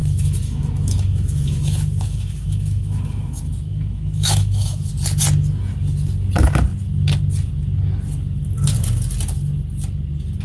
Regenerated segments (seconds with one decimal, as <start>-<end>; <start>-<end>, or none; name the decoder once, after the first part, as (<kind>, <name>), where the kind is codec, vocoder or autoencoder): 0.0-4.9 (autoencoder, DAC-VAE)